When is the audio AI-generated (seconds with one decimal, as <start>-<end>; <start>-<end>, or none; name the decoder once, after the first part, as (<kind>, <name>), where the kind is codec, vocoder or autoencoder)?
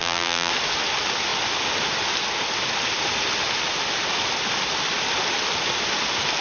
0.0-0.5 (vocoder, BigVGAN v2)